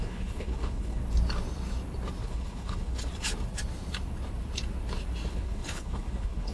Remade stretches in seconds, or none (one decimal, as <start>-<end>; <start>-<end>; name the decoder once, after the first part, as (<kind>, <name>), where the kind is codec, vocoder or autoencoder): 0.0-1.0 (codec, HILCodec); 2.2-3.1; 5.3-6.5